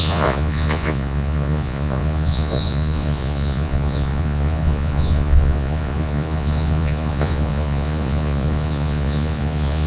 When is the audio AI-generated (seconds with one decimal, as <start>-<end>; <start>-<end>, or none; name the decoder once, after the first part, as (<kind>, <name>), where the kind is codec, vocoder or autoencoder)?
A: 0.0-9.9 (vocoder, Vocos)